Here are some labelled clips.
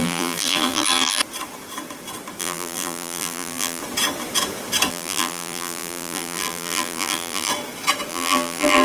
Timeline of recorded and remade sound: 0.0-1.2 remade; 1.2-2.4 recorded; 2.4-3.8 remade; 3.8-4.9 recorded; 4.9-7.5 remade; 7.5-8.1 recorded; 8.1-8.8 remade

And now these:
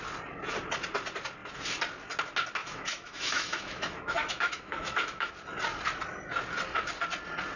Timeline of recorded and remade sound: 0.0-2.6 recorded; 2.6-5.3 remade; 5.3-7.6 recorded

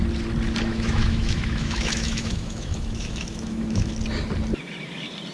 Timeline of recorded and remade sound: 0.0-0.7 recorded; 0.7-3.9 remade; 3.9-5.3 recorded

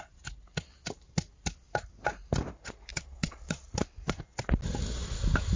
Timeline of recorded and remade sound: 0.0-2.9 recorded; 2.9-3.7 remade; 3.7-5.6 recorded

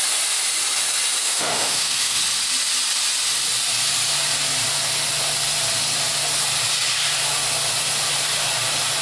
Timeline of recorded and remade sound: 0.0-1.2 recorded; 1.2-2.2 remade; 2.2-9.0 recorded